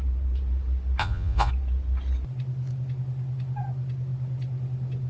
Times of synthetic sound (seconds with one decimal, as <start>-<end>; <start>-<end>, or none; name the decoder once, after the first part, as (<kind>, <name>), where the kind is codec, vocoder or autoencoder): 1.0-1.5 (vocoder, Vocos)